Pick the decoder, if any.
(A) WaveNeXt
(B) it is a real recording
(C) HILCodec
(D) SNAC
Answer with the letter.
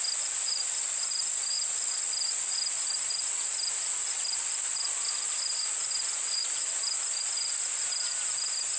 B